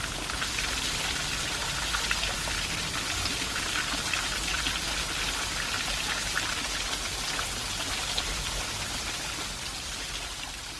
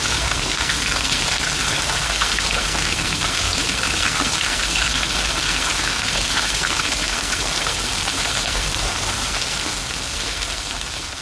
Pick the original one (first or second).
first